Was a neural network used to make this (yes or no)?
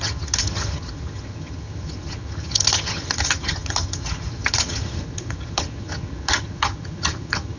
yes